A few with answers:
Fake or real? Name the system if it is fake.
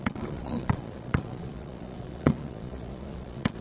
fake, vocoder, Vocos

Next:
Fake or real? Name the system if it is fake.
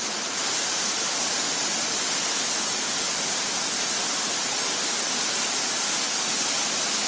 real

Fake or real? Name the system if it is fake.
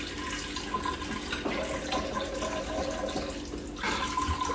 real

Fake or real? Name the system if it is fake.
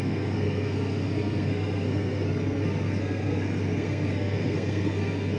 fake, codec, SNAC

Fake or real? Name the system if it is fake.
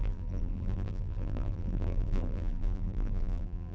fake, vocoder, BigVGAN v2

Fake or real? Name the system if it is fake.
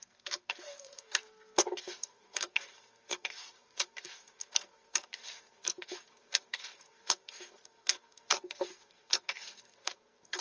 fake, codec, SNAC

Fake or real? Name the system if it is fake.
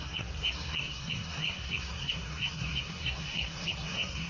fake, codec, SNAC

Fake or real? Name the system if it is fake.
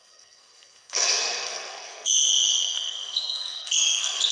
fake, codec, SNAC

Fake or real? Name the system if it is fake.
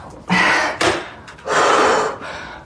real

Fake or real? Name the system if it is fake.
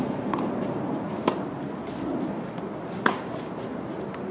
real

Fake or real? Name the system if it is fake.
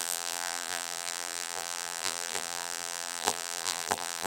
fake, vocoder, BigVGAN v2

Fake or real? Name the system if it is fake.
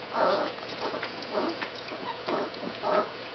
fake, vocoder, Vocos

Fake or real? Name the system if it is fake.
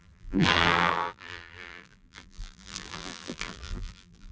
fake, vocoder, BigVGAN v2